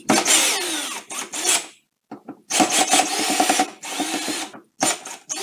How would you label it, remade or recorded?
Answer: recorded